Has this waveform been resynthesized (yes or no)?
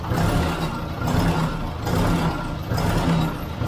no